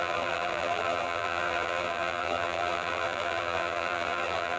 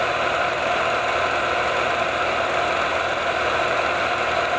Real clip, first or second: second